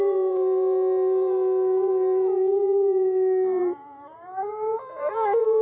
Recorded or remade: remade